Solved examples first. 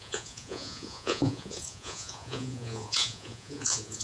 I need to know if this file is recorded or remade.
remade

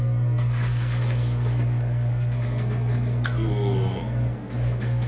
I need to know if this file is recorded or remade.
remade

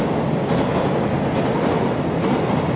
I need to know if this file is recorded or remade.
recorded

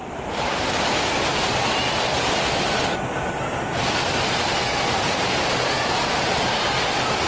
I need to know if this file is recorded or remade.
recorded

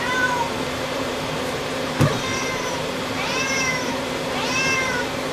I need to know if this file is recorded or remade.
remade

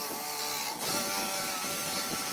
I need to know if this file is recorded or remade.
remade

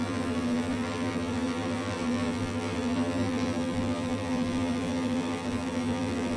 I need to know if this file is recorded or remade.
remade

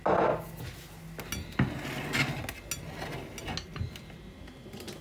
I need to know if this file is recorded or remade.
recorded